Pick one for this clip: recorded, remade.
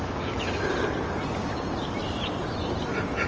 recorded